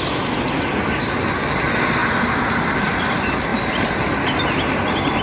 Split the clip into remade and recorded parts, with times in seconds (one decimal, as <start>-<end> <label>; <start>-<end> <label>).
0.0-5.2 recorded